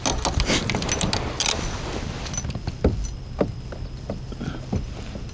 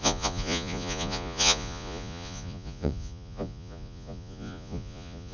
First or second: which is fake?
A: second